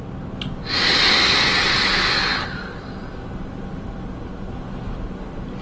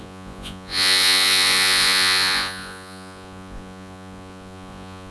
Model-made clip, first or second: second